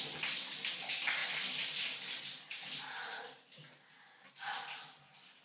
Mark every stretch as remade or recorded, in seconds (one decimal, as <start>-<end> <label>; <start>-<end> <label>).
0.0-5.4 recorded